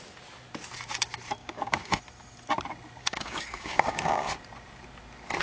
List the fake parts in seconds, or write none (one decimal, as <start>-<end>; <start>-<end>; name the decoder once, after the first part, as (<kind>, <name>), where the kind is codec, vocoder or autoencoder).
1.4-2.0 (codec, DAC); 3.0-4.3